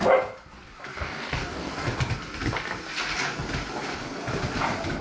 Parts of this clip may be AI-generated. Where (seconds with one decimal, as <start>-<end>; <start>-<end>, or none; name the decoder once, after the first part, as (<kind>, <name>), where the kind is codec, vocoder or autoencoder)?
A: 0.9-1.7 (codec, DAC)